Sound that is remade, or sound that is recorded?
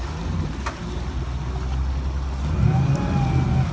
recorded